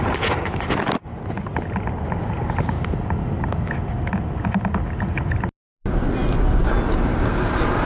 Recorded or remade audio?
recorded